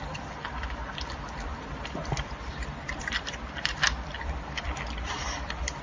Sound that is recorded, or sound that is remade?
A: remade